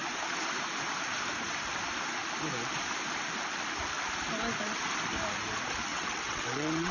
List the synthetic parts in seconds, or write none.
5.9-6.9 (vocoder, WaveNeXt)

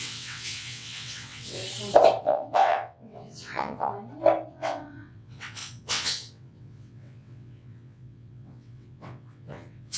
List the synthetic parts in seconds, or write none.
0.0-1.6 (vocoder, WaveNeXt); 2.2-3.9; 4.5-10.0

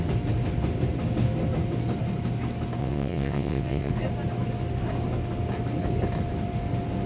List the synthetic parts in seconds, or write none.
2.8-3.9 (vocoder, WaveNeXt)

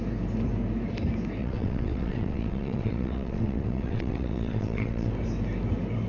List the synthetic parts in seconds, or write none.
1.4-5.1 (vocoder, WaveNeXt)

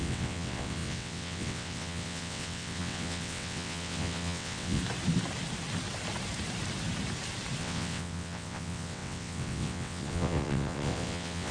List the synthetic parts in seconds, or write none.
0.0-4.8 (vocoder, WaveNeXt); 7.6-11.5

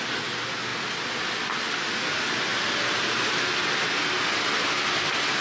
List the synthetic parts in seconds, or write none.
none

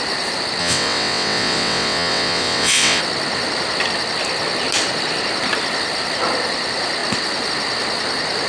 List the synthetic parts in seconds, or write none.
0.6-3.0 (vocoder, WaveNeXt)

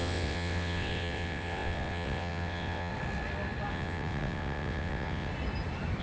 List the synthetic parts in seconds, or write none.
0.0-2.9 (vocoder, WaveNeXt); 3.7-5.3